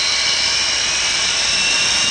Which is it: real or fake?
fake